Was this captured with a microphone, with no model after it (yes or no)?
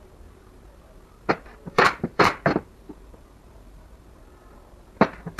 no